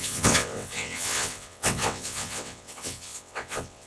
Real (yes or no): no